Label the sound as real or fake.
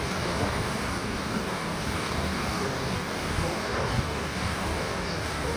fake